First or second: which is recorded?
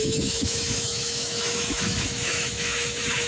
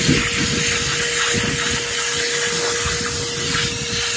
second